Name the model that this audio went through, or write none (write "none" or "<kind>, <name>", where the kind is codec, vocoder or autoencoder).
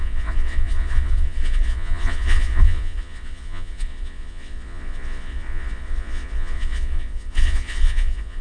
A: vocoder, Vocos